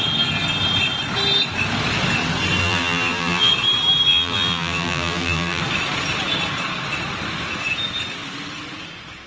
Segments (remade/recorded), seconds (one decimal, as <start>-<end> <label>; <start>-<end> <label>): 0.0-2.6 recorded; 2.6-3.5 remade; 3.5-4.1 recorded; 4.1-5.6 remade; 5.6-9.3 recorded